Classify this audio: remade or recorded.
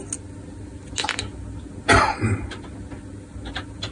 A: recorded